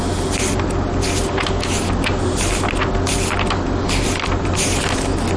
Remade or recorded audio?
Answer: recorded